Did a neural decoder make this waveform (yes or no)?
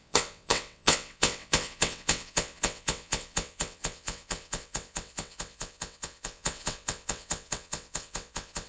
yes